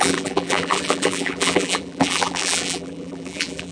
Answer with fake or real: fake